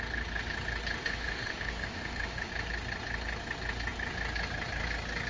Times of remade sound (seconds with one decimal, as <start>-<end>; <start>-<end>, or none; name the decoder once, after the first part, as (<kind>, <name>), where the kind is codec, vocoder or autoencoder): 1.0-2.5 (autoencoder, DAC-VAE)